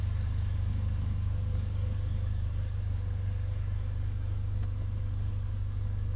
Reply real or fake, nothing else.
fake